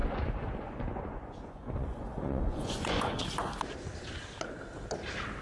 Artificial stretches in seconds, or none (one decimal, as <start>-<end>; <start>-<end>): 0.0-3.2